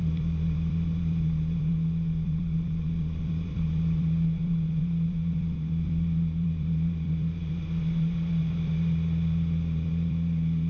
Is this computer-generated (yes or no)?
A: yes